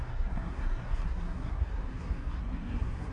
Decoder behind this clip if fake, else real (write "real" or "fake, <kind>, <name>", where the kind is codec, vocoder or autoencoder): fake, codec, SNAC